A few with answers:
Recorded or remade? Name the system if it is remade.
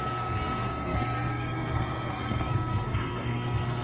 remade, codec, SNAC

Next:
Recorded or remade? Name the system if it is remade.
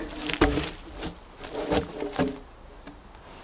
recorded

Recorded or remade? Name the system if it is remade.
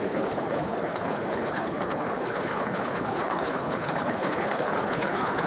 remade, codec, HILCodec